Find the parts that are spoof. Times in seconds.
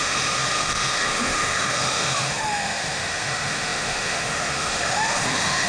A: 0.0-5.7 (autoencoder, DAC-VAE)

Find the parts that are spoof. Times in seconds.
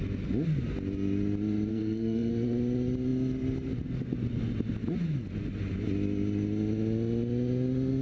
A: 1.7-2.3 (codec, SNAC)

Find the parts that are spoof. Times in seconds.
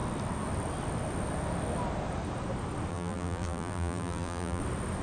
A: 2.9-4.6 (vocoder, BigVGAN v2)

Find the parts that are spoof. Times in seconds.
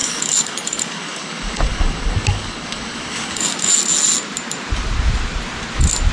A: 0.0-3.7 (codec, DAC)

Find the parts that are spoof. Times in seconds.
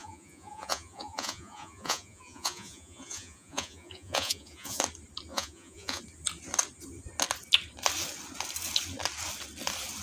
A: 0.0-4.8 (vocoder, Vocos); 5.3-6.0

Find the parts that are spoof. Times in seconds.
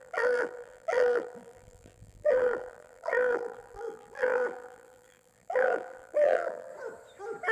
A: 0.0-6.7 (vocoder, BigVGAN v2)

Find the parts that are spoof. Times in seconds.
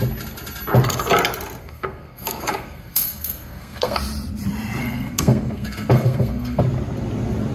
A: 1.6-4.0 (codec, SNAC); 4.8-6.6